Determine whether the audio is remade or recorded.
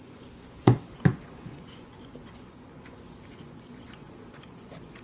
remade